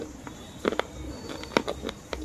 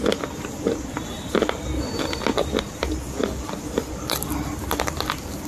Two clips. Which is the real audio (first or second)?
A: first